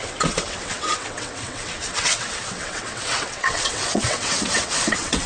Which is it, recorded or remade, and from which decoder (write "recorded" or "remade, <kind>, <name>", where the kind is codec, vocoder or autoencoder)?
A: remade, vocoder, WaveNeXt